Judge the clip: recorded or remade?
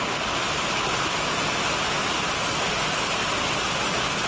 recorded